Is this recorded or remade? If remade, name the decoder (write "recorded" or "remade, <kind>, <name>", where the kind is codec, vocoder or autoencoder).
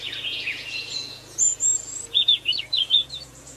remade, vocoder, Vocos